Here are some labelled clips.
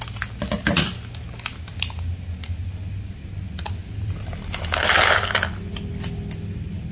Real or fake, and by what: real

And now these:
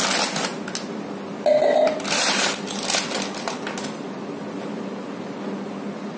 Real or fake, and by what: real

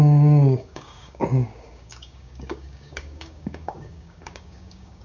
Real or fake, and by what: fake, codec, DAC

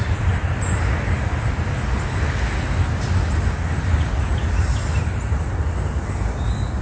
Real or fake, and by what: real